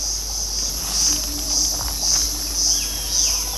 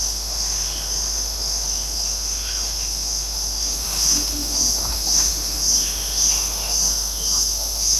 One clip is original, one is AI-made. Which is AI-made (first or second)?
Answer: second